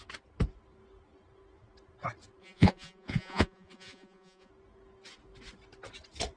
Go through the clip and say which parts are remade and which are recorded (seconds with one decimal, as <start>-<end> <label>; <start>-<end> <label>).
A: 0.0-2.4 recorded; 2.4-4.5 remade; 4.5-6.4 recorded

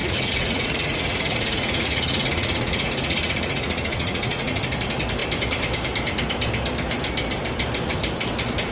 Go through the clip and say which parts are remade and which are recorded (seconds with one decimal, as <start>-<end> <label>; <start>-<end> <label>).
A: 0.0-4.6 remade; 4.6-8.7 recorded

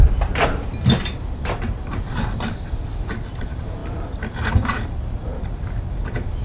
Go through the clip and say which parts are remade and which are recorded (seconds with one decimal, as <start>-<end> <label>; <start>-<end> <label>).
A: 0.0-6.4 recorded

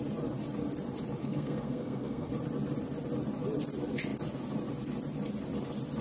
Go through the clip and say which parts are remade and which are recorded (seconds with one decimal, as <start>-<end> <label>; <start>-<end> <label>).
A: 0.0-1.2 recorded; 1.2-2.3 remade; 2.3-6.0 recorded

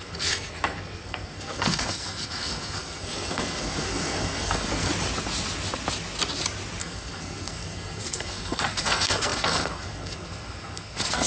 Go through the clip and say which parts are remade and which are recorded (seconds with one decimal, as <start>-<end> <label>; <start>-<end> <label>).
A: 0.0-4.9 remade; 4.9-6.8 recorded; 6.8-11.3 remade

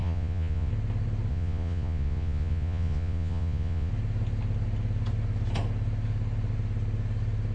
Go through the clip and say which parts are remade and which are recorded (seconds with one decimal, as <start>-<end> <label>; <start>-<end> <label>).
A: 0.0-0.7 remade; 0.7-1.3 recorded; 1.3-3.9 remade; 3.9-7.5 recorded

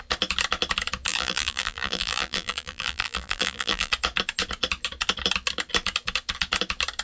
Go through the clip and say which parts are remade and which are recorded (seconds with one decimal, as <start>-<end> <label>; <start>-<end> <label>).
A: 0.0-1.1 recorded; 1.1-3.9 remade; 3.9-7.0 recorded

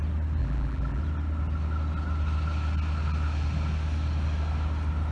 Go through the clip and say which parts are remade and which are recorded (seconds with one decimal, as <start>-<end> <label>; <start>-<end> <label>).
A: 0.0-0.4 recorded; 0.4-1.0 remade; 1.0-5.1 recorded